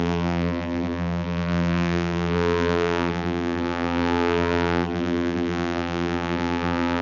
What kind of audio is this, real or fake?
fake